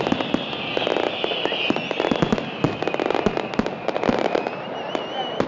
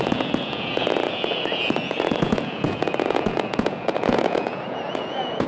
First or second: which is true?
first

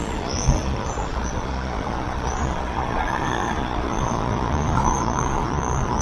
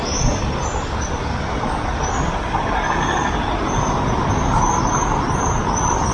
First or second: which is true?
second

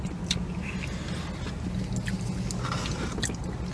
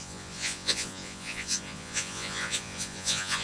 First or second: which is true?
first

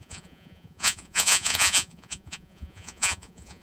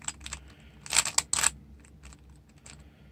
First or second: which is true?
second